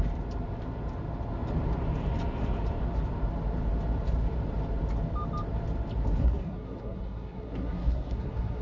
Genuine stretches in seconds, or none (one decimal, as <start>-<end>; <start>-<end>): 0.0-6.2